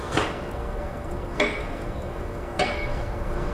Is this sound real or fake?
fake